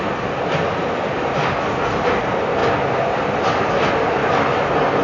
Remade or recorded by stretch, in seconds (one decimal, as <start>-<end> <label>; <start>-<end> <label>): 0.0-5.0 recorded